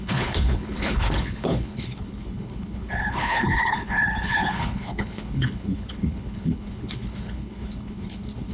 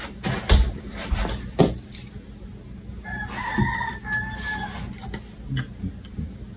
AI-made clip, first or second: first